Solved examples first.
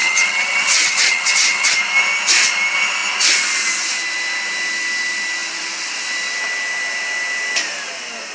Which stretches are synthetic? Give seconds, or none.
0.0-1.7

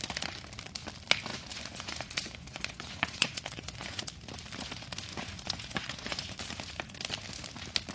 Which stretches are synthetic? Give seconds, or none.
1.3-4.0; 5.1-6.4

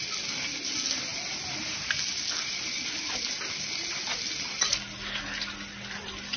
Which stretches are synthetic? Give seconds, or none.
none

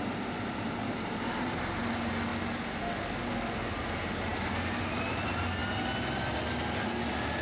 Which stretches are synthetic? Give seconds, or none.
none

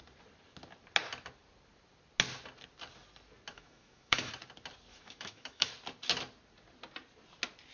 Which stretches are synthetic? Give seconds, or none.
3.5-4.3; 4.9-5.7